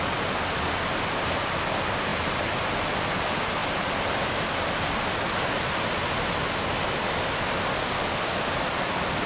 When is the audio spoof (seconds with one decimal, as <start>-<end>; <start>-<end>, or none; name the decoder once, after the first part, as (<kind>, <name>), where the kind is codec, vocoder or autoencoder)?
2.1-2.7 (vocoder, BigVGAN v2)